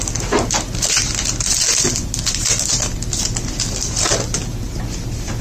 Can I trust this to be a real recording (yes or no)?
yes